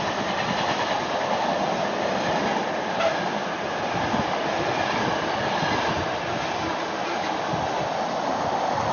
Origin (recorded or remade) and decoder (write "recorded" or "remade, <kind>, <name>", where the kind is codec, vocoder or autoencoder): remade, vocoder, BigVGAN v2